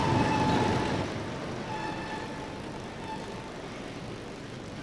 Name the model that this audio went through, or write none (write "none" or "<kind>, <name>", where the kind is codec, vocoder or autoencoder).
none